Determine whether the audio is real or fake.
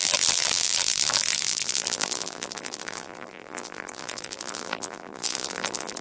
fake